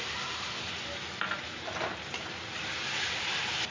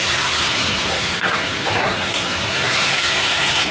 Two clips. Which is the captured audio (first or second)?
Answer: first